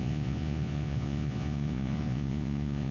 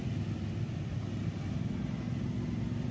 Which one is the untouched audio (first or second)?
second